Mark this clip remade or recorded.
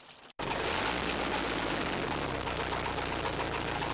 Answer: recorded